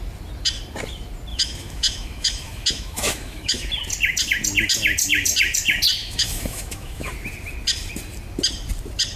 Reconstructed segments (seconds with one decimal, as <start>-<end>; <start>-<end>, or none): 1.3-3.7; 6.0-7.1